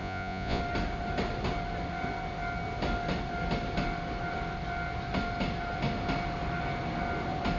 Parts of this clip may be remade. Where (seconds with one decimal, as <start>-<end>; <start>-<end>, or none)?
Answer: 0.0-0.6